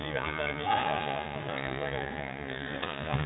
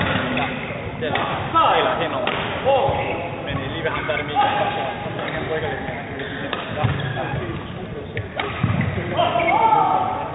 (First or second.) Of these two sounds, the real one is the second